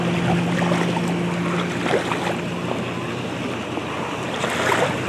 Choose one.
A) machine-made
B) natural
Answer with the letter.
B